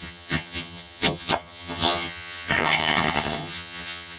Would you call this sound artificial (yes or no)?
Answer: yes